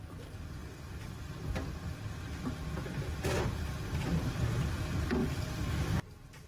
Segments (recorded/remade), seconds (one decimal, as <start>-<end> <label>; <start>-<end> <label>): 0.0-5.2 recorded; 5.2-5.7 remade; 5.7-6.5 recorded